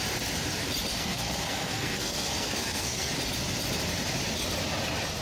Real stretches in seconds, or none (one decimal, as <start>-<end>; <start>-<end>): 0.0-0.9; 3.1-5.2